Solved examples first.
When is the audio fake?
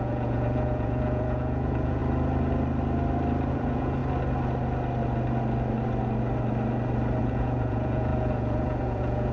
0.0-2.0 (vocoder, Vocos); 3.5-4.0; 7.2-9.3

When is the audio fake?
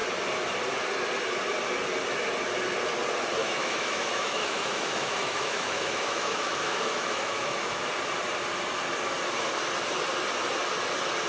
3.4-7.9 (autoencoder, DAC-VAE)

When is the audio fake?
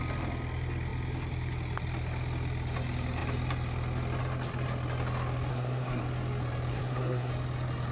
5.5-6.0 (codec, SNAC); 6.7-7.3